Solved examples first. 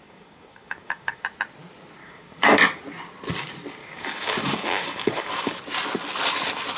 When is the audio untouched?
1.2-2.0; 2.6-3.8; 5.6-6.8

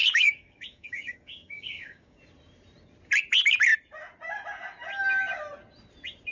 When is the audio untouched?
2.2-6.3

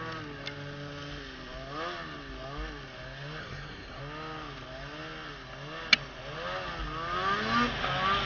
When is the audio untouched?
0.0-3.4; 4.0-8.3

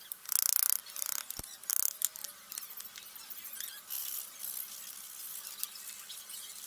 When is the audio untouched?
0.0-6.7

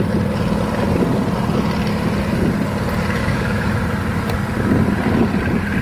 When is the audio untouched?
0.0-3.2; 3.8-5.8

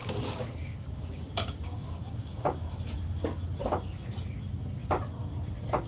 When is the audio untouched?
2.9-5.9